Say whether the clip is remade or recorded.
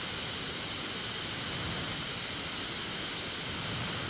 recorded